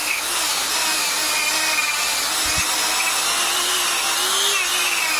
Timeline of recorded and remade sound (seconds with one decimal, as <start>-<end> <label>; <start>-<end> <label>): 0.0-5.2 recorded